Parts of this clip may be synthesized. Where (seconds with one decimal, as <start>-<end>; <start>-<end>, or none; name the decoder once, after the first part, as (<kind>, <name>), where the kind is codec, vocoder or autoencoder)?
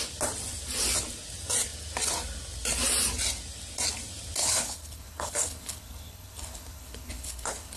4.4-7.8 (codec, HILCodec)